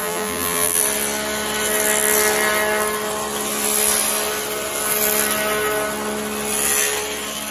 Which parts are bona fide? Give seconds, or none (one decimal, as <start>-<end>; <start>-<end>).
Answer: 0.8-7.5